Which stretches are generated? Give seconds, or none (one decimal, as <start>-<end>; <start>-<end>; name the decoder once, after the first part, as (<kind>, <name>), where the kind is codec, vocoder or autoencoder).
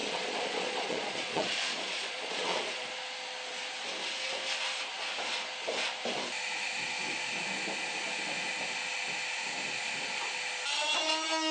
0.0-2.9 (vocoder, Vocos)